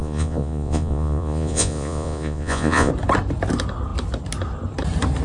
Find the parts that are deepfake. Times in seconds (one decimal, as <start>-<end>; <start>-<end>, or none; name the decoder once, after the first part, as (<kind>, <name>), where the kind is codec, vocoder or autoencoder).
0.0-2.9 (vocoder, Vocos)